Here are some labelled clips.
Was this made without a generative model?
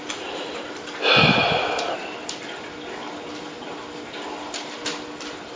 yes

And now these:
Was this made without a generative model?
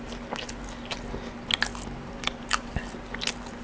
yes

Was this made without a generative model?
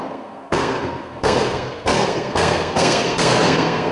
no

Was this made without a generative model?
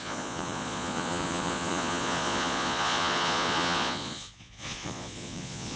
no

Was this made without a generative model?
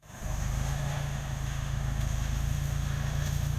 no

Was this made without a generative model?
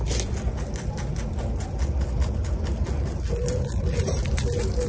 yes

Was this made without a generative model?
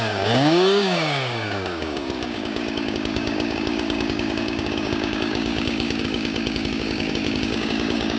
no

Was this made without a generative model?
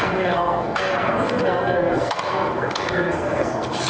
no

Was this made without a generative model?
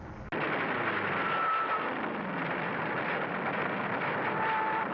yes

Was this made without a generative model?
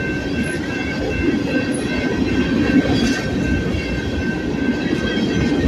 yes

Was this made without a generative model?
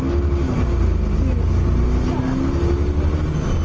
yes